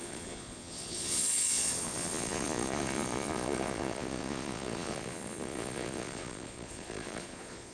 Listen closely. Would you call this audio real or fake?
fake